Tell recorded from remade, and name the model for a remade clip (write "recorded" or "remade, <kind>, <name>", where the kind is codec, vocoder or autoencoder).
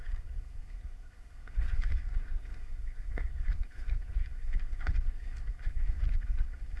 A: remade, codec, SNAC